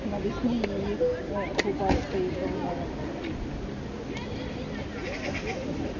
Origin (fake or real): real